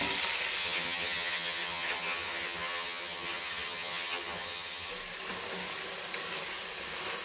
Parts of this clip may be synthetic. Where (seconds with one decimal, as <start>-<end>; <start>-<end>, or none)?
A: 0.6-4.9